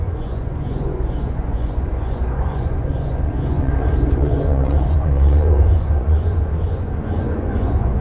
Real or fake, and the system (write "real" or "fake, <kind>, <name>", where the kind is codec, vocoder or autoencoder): fake, vocoder, Vocos